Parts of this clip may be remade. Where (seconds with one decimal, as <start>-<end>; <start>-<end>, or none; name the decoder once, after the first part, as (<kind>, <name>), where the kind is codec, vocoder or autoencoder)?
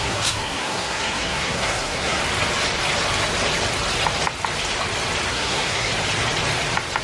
0.0-2.2 (codec, SNAC); 5.3-5.9